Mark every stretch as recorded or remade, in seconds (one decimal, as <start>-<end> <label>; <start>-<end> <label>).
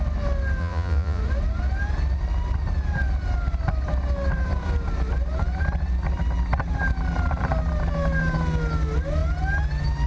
0.0-0.6 recorded; 0.6-1.2 remade; 1.2-10.1 recorded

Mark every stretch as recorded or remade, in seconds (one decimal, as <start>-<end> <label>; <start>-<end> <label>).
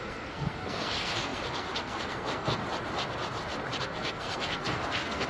0.0-2.6 remade; 2.6-3.8 recorded; 3.8-5.3 remade